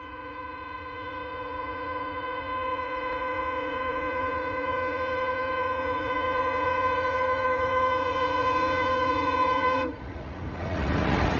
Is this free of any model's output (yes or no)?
no